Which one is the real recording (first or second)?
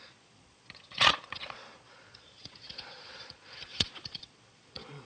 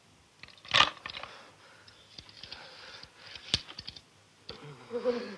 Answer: second